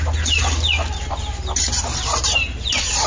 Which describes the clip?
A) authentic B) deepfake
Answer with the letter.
A